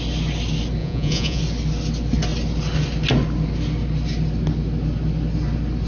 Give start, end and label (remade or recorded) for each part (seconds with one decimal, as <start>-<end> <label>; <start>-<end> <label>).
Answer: 0.0-0.8 recorded; 0.8-1.4 remade; 1.4-5.9 recorded